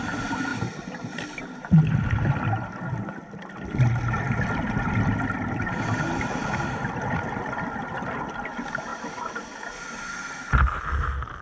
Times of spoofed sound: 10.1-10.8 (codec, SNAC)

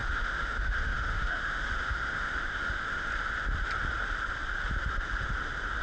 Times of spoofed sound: 0.0-3.1 (autoencoder, DAC-VAE)

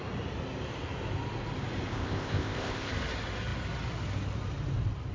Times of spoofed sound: 1.9-2.9 (codec, ZipCodec)

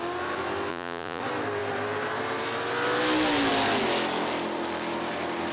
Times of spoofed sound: 0.7-1.2 (vocoder, Vocos)

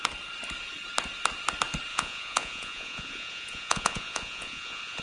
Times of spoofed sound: 1.9-5.0 (vocoder, Vocos)